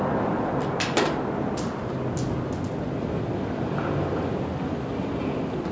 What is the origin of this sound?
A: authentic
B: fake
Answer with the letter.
A